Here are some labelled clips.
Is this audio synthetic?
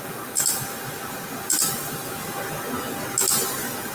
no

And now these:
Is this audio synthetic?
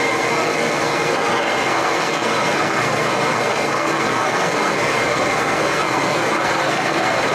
yes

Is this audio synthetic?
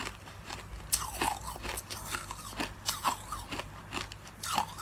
no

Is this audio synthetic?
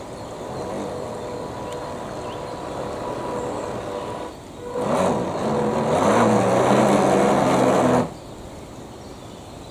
no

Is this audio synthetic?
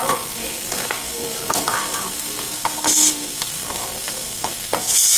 yes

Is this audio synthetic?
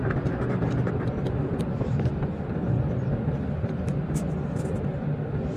no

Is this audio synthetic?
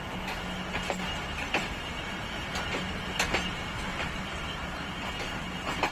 no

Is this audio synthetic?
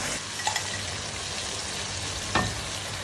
no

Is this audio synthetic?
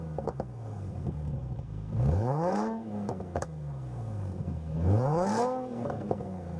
yes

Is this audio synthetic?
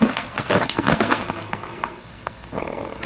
yes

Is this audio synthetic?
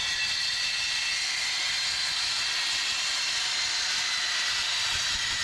no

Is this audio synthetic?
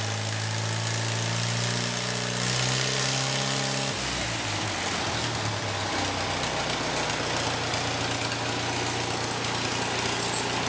no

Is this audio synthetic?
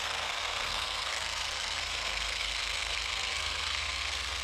yes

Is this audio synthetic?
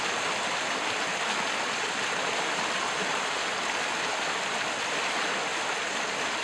no